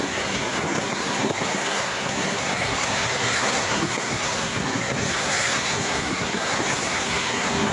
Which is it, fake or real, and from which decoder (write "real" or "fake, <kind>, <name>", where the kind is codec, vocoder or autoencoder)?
fake, codec, SNAC